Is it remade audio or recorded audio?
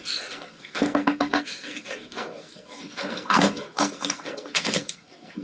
remade